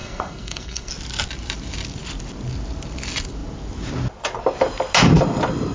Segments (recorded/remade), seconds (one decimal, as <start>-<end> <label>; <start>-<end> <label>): 0.0-0.9 remade; 0.9-5.7 recorded